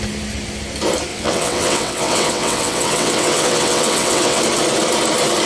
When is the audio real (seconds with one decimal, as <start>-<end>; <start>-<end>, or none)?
0.0-1.1; 4.4-5.5